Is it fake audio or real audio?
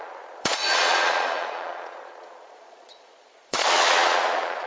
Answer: fake